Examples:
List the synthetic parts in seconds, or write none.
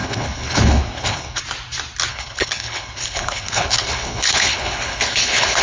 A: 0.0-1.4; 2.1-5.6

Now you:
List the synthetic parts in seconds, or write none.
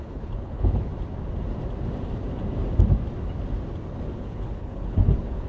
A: 0.0-0.9; 4.2-5.5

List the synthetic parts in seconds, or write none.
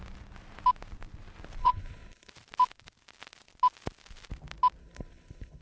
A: 1.6-2.3; 4.8-5.6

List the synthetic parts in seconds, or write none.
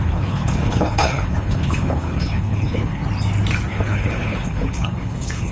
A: 0.0-3.0; 3.7-5.5